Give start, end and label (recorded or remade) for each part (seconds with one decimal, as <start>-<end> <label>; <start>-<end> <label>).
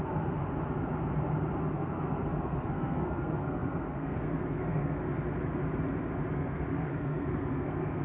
0.0-0.4 remade; 0.4-1.6 recorded; 1.6-5.0 remade; 5.0-6.3 recorded; 6.3-8.0 remade